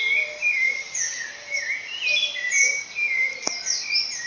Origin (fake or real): real